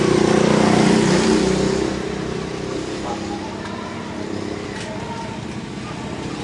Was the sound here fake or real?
real